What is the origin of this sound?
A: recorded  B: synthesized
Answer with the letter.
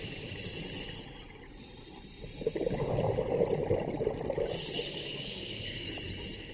A